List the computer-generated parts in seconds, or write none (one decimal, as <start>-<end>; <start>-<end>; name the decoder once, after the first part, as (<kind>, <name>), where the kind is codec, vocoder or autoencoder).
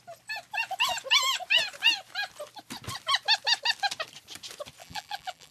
4.8-5.5 (vocoder, BigVGAN v2)